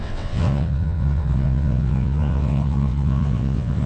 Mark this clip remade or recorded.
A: remade